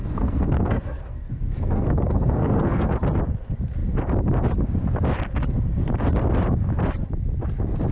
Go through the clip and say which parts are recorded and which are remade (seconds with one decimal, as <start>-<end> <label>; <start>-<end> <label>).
0.0-2.9 remade; 2.9-7.9 recorded